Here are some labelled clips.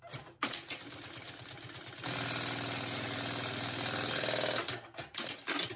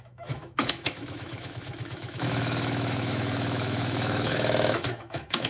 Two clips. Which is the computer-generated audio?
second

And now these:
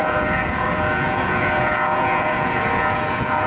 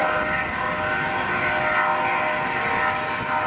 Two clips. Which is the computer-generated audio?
first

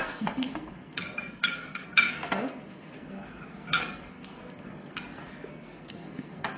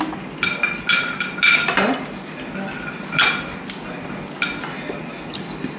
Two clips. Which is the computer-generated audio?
first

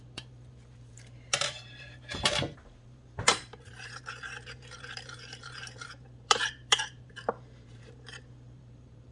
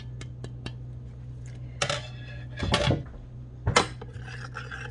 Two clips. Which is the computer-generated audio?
first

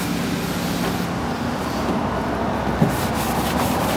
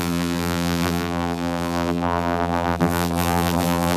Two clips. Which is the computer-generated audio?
second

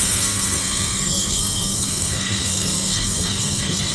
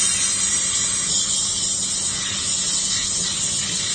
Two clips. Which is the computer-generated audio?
first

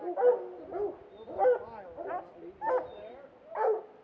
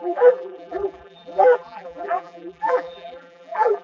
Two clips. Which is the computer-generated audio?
second